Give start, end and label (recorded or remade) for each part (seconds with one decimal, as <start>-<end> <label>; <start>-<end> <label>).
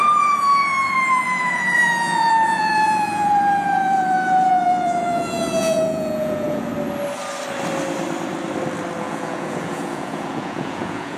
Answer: 0.0-6.7 remade; 6.7-9.0 recorded; 9.0-11.2 remade